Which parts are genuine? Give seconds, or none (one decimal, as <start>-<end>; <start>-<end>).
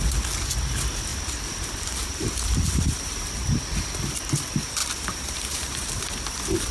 0.0-1.1; 3.6-4.8; 6.0-6.7